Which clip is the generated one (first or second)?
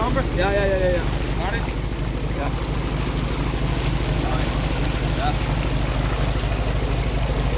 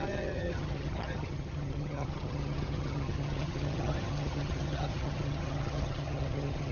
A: second